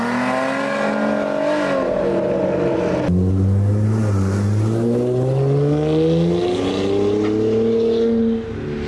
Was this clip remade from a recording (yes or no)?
no